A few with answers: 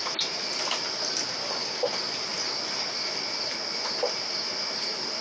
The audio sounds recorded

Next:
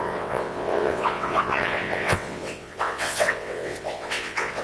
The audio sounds remade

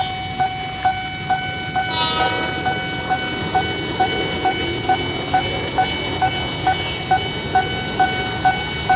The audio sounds recorded